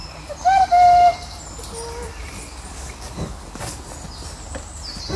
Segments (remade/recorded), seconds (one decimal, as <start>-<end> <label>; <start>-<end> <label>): 0.0-2.7 recorded; 2.7-3.8 remade; 3.8-5.2 recorded